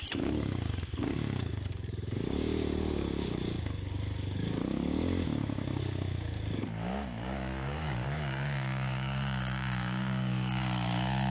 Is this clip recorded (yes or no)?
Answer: no